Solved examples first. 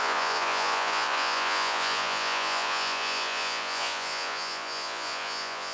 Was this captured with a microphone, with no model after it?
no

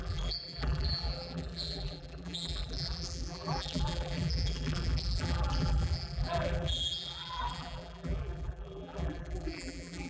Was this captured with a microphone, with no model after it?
no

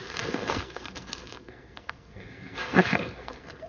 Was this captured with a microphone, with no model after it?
no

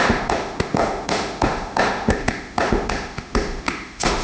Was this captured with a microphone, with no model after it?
no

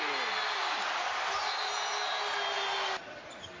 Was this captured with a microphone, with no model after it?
yes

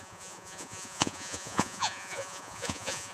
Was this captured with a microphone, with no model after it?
no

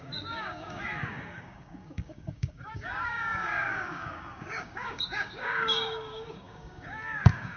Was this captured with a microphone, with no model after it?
no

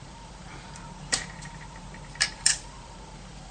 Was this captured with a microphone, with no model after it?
no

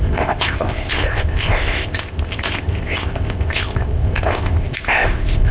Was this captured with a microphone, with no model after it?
no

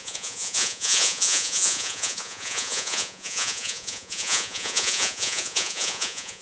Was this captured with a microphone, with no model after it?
no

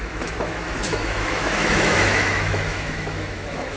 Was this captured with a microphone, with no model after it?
no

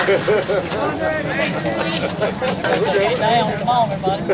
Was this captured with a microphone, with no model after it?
yes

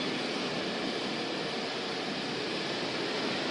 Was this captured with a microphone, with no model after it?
yes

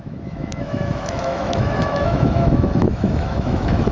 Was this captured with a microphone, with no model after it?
no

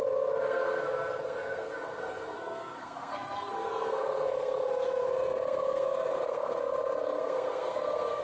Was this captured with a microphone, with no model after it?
no